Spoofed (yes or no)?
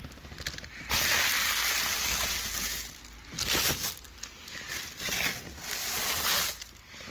no